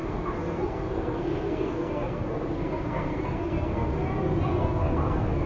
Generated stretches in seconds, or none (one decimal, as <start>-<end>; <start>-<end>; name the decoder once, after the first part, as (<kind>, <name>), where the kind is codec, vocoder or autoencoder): 0.0-3.9 (codec, SNAC); 4.5-5.5